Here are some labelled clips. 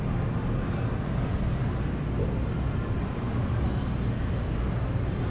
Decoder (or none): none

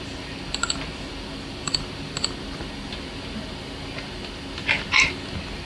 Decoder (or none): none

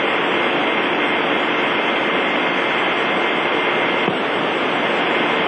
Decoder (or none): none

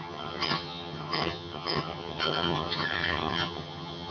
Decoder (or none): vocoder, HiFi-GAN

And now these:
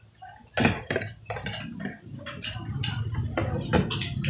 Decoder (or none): none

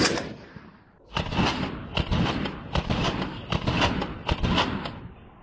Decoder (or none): vocoder, BigVGAN v2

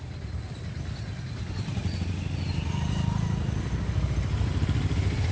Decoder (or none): none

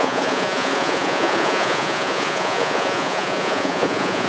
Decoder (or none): vocoder, Vocos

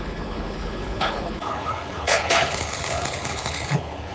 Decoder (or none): codec, HILCodec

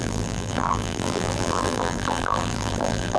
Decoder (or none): vocoder, BigVGAN v2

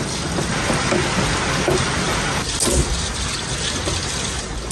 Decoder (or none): none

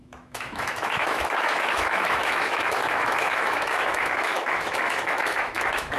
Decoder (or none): autoencoder, DAC-VAE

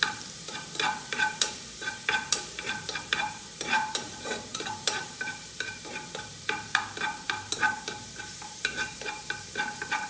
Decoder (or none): vocoder, BigVGAN v2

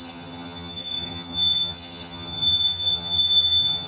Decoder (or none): vocoder, HiFi-GAN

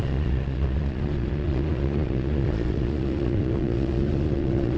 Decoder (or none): vocoder, Vocos